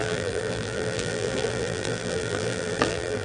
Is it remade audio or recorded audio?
remade